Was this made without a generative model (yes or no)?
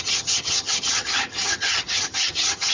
no